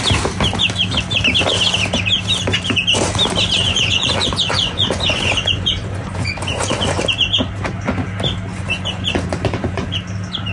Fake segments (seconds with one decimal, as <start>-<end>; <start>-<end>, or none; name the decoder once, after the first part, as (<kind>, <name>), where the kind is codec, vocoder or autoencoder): 3.6-7.0 (vocoder, Vocos); 8.5-10.0

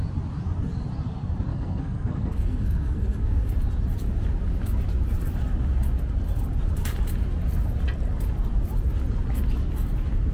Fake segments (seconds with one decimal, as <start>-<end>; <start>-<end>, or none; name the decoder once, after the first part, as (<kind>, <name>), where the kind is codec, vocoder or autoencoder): 1.5-3.5 (codec, SNAC)

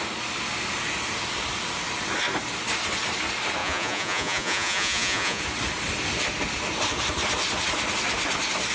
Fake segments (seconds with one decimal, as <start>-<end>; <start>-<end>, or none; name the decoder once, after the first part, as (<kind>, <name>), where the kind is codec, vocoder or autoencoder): 3.6-5.4 (vocoder, Vocos)

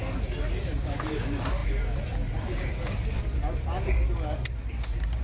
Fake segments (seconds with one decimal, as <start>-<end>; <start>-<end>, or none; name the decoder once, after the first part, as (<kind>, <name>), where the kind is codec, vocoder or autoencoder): none

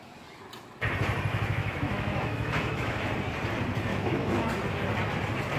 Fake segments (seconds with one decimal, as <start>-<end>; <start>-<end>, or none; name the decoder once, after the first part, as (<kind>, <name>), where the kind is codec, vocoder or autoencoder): 1.3-3.1 (autoencoder, DAC-VAE); 3.9-4.5

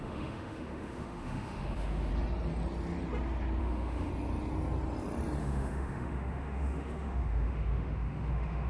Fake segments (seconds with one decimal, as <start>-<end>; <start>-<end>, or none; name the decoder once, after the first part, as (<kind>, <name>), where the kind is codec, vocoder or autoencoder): 0.0-2.1 (autoencoder, DAC-VAE); 3.6-4.1; 5.4-8.7